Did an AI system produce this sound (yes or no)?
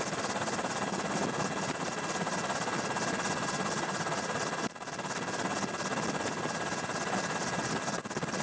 no